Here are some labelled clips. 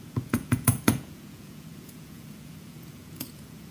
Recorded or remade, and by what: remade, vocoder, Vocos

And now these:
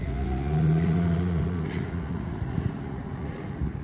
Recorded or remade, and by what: remade, vocoder, Vocos